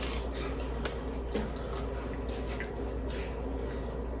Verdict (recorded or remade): recorded